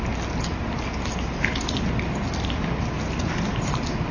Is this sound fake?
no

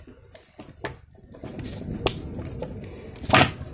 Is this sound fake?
no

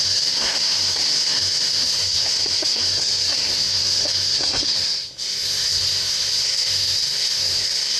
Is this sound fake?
yes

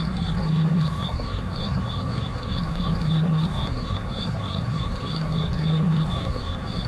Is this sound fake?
yes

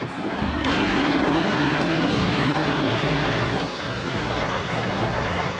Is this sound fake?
yes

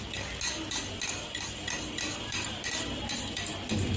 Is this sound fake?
no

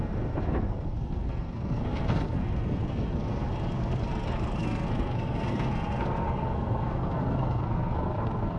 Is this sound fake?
yes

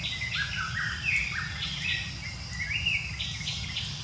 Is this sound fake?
no